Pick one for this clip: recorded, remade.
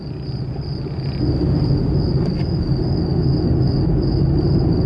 recorded